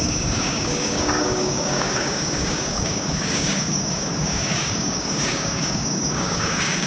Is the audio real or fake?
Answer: fake